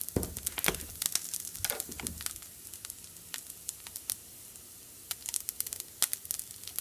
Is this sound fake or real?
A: real